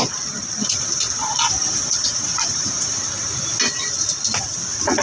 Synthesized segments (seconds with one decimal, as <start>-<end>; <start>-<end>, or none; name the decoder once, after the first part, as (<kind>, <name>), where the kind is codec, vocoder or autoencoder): 0.6-3.6 (vocoder, BigVGAN v2)